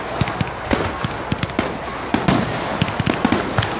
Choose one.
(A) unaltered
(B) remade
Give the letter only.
A